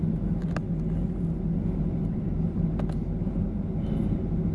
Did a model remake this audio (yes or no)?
no